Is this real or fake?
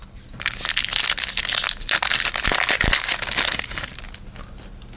real